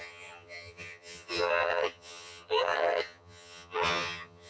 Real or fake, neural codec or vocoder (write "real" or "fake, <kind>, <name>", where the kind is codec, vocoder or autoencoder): fake, vocoder, HiFi-GAN